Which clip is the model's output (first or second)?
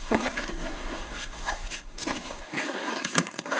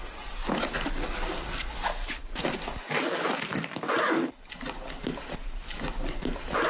first